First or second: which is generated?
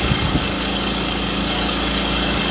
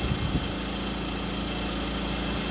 first